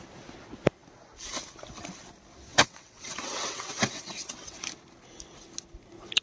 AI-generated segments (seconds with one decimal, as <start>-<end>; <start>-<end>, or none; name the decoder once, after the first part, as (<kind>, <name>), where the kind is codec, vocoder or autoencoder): 2.5-4.6 (vocoder, WaveNeXt)